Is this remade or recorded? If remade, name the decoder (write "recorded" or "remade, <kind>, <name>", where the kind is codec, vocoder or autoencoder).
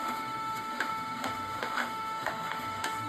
remade, autoencoder, DAC-VAE